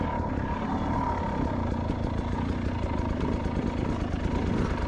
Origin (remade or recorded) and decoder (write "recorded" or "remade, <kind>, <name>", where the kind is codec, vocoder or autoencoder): recorded